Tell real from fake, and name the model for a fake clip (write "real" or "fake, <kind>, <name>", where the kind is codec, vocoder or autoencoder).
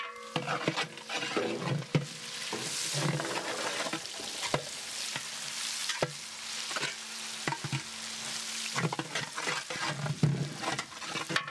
real